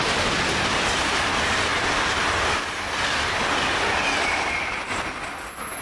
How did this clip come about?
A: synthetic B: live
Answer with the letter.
B